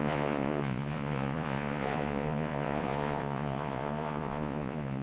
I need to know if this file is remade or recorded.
remade